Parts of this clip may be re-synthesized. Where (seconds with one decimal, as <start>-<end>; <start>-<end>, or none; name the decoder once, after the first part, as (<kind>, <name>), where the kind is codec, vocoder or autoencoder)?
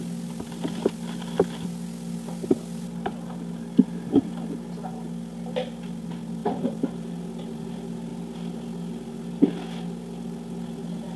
6.4-7.1 (vocoder, BigVGAN v2)